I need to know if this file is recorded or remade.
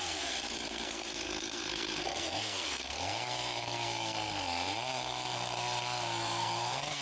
remade